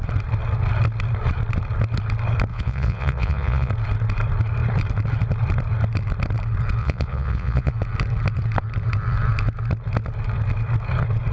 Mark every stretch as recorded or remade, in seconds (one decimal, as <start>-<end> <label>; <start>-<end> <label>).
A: 0.0-2.5 recorded; 2.5-3.7 remade; 3.7-6.8 recorded; 6.8-7.7 remade; 7.7-11.3 recorded